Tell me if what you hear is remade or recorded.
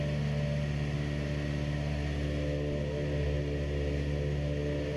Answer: recorded